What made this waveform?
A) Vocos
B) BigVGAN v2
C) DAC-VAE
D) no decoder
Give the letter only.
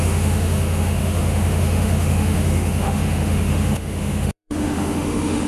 C